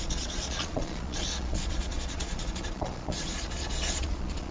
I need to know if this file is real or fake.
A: fake